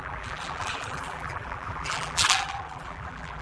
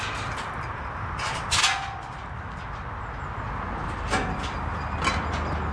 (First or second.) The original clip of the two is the second